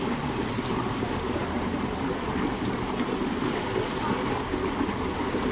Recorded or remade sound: recorded